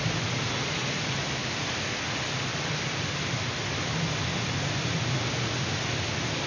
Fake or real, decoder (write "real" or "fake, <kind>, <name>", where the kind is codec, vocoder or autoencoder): real